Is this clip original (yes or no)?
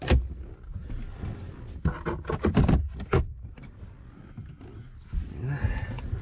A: yes